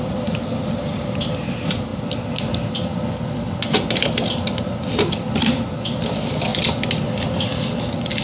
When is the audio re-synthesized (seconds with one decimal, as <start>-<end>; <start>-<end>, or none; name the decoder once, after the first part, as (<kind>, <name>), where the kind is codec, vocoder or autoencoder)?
0.0-6.5 (vocoder, BigVGAN v2); 7.2-8.2